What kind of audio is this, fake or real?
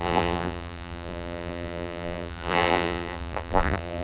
fake